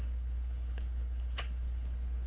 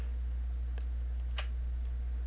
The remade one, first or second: first